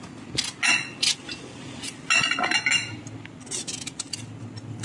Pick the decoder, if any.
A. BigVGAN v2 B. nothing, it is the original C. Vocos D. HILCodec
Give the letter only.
B